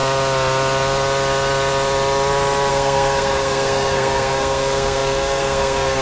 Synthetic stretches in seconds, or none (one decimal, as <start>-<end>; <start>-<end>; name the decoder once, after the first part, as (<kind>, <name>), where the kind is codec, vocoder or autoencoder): 2.7-6.0 (codec, SNAC)